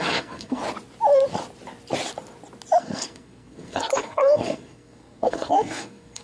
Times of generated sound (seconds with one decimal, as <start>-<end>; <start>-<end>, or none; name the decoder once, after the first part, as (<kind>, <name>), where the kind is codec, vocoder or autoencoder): 0.0-0.6 (codec, SNAC); 2.8-6.2